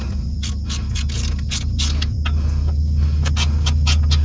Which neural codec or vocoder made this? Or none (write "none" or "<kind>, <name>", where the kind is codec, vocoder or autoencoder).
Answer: none